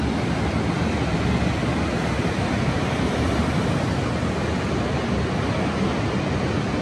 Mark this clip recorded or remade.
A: recorded